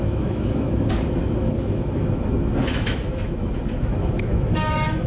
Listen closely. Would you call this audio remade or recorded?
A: remade